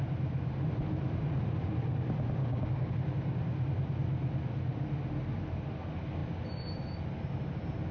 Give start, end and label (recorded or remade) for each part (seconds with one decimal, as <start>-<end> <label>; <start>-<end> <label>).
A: 0.0-2.4 recorded; 2.4-2.9 remade; 2.9-7.9 recorded